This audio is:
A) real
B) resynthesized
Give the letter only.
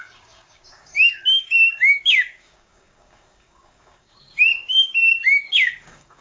B